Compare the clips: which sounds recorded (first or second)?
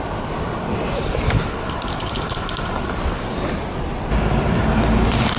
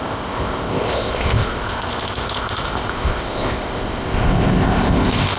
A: first